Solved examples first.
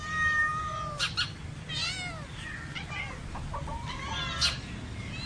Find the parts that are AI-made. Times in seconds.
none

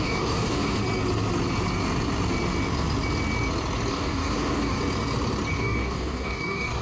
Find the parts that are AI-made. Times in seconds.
0.0-0.8 (codec, DAC); 3.9-4.8; 5.5-6.8

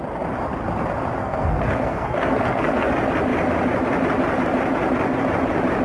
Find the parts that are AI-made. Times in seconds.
1.2-2.9 (codec, SNAC)

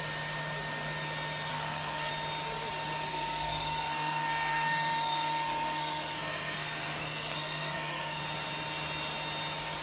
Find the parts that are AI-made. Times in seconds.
1.5-2.1 (codec, SNAC); 3.1-8.2

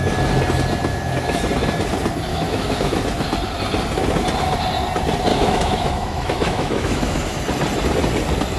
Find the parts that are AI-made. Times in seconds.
0.9-1.4 (autoencoder, DAC-VAE); 2.3-3.0; 5.3-7.4